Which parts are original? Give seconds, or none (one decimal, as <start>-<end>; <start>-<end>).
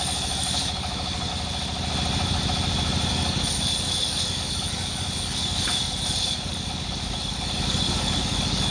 1.3-3.1